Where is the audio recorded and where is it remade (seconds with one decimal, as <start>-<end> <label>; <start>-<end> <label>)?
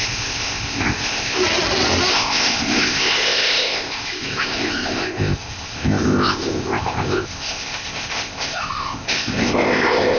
0.0-1.4 remade; 1.4-2.1 recorded; 2.1-10.2 remade